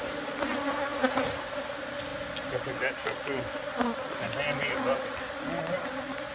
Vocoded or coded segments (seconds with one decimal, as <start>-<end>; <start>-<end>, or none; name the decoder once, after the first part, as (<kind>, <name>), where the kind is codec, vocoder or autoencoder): 0.9-1.4 (vocoder, Vocos)